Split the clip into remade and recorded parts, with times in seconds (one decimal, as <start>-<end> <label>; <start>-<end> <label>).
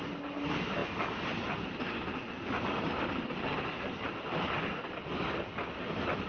0.0-6.3 recorded